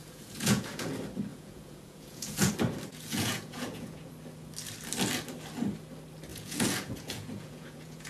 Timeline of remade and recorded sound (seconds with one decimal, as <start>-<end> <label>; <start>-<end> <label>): 0.0-0.9 remade; 0.9-1.3 recorded; 1.3-2.5 remade; 2.5-2.9 recorded; 2.9-4.1 remade; 4.1-6.3 recorded; 6.3-8.1 remade